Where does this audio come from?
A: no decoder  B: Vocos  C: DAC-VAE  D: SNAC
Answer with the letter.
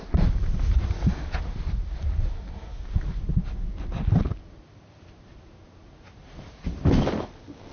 A